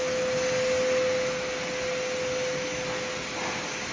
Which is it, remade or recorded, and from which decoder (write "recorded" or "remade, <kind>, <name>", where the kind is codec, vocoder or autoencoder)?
recorded